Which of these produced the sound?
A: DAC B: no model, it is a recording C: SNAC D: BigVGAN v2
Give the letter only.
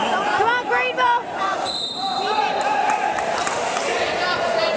D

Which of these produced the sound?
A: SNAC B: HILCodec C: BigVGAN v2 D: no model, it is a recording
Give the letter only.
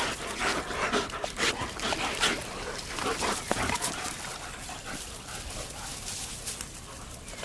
D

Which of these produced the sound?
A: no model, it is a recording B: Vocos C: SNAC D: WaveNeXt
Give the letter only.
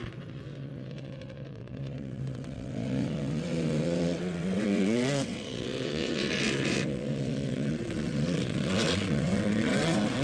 D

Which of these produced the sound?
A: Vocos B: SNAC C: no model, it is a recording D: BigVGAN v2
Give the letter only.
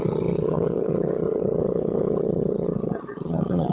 A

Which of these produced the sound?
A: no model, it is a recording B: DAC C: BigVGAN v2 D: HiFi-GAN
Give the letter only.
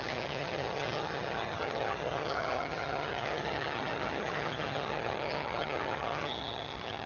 D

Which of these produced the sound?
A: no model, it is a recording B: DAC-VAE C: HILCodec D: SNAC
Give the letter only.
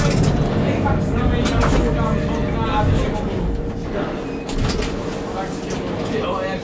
A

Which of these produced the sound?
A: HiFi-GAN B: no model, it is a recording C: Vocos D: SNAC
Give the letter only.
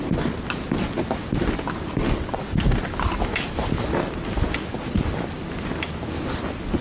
B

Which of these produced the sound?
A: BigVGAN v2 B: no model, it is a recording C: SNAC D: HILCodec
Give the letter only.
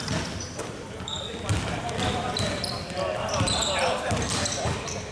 B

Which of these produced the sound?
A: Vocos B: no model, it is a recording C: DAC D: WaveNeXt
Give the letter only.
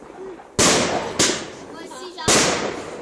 B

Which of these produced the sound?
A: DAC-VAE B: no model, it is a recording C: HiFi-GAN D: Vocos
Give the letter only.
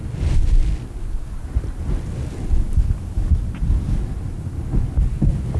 B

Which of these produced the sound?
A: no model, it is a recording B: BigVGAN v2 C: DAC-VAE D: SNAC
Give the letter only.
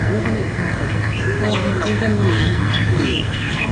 D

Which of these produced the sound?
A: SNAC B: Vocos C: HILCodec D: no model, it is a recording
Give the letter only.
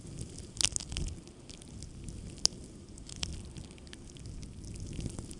D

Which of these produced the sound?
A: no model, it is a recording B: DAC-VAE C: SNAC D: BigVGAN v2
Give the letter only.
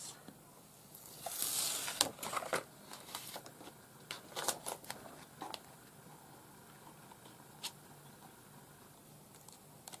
A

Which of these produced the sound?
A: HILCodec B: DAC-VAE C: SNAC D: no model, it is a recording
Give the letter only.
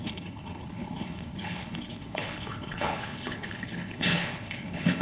A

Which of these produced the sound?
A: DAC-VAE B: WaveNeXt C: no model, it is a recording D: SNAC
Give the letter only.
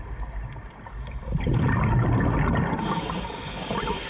C